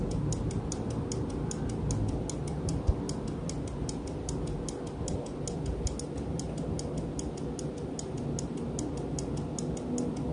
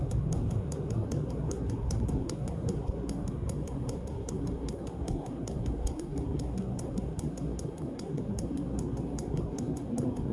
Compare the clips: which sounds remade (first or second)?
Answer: second